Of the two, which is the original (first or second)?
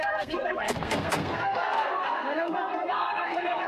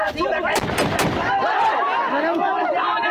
second